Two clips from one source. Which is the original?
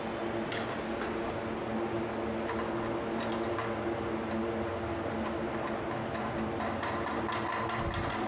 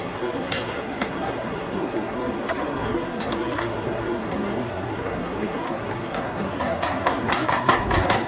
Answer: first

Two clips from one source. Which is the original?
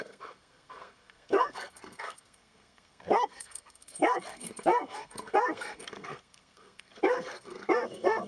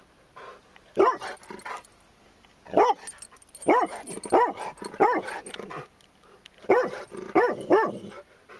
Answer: second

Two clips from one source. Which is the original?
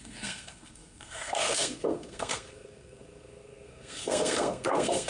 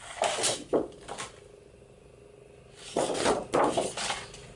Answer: second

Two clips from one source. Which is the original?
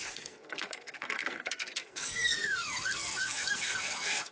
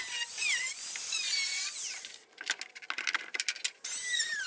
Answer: second